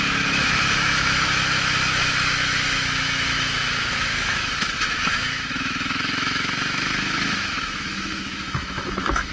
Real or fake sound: fake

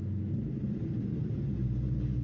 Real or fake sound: real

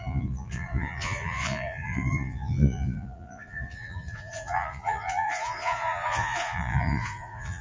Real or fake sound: fake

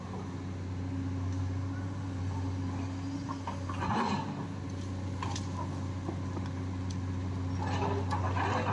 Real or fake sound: real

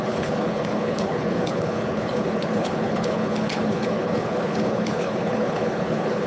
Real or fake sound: fake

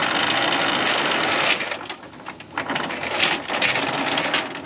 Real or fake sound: real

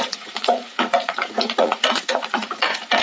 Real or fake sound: fake